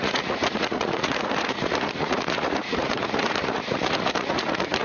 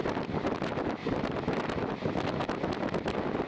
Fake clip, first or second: first